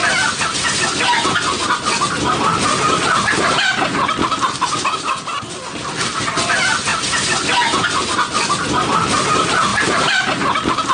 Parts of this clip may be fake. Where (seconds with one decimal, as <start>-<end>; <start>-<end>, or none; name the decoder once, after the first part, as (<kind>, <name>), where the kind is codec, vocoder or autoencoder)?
9.7-10.3 (vocoder, BigVGAN v2)